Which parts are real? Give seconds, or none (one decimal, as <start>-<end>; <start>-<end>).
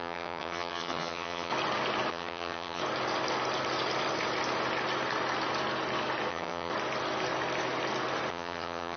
1.5-2.1; 2.8-6.3; 6.7-8.3